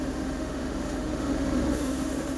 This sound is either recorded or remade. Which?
remade